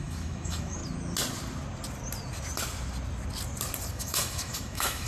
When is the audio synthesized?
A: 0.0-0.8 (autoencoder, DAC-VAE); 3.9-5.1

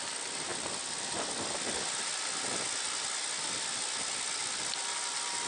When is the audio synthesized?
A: none

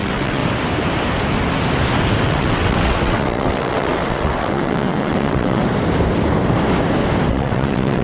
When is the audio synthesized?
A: 0.0-0.4 (vocoder, WaveNeXt); 2.2-5.6; 7.3-8.0

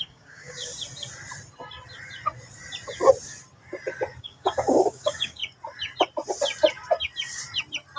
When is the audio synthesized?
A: 0.0-0.7 (codec, DAC); 4.2-5.4